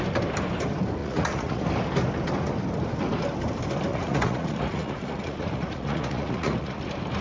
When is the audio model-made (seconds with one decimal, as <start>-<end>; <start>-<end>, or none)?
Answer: 1.0-1.6; 3.9-6.8